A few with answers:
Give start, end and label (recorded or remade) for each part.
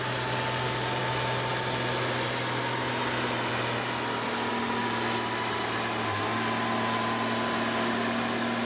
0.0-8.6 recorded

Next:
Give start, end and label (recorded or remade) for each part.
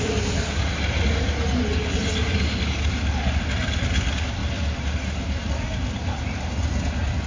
0.0-7.3 recorded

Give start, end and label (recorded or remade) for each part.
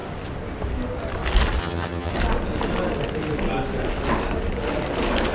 0.0-1.6 recorded; 1.6-2.1 remade; 2.1-5.3 recorded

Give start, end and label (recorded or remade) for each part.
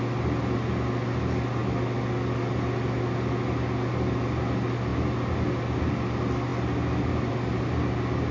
0.0-8.3 recorded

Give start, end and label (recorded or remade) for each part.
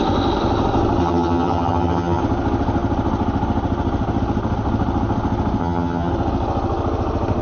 0.0-1.0 recorded; 1.0-2.2 remade; 2.2-5.6 recorded; 5.6-6.1 remade; 6.1-7.4 recorded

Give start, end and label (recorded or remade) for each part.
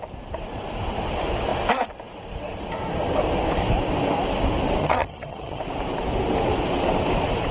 0.0-4.8 recorded; 4.8-5.6 remade; 5.6-7.5 recorded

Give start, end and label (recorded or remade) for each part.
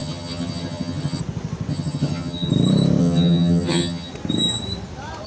0.0-1.2 remade; 1.2-1.7 recorded; 1.7-2.5 remade; 2.5-3.0 recorded; 3.0-4.1 remade; 4.1-5.3 recorded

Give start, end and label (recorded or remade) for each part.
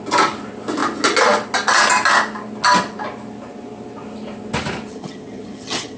0.0-4.9 recorded; 4.9-6.0 remade